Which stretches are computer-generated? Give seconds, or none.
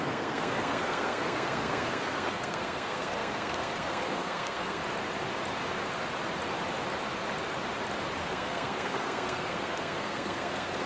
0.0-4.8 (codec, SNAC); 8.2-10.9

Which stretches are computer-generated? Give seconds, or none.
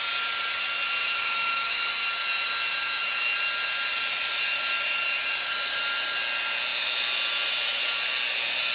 1.0-1.9 (autoencoder, DAC-VAE)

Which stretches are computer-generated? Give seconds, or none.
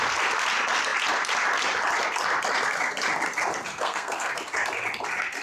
3.7-4.3 (codec, SNAC)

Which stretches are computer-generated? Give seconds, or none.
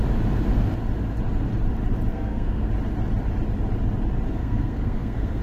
2.1-2.7 (codec, SNAC); 4.4-5.4